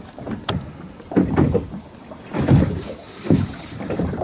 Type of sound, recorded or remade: remade